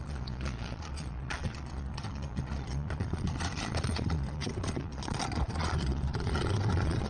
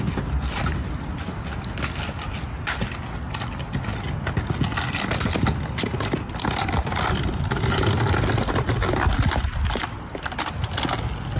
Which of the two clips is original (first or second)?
second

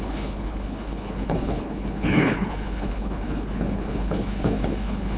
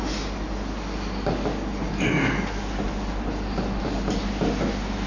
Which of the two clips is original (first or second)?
second